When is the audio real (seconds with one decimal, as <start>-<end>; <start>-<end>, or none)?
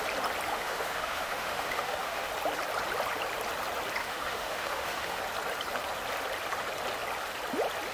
0.0-0.5; 2.3-4.0; 5.2-7.9